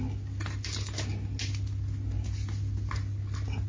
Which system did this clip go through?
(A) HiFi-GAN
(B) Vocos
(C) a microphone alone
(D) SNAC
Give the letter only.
C